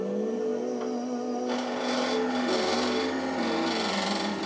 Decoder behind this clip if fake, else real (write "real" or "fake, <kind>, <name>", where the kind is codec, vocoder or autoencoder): real